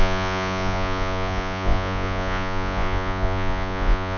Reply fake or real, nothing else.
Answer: fake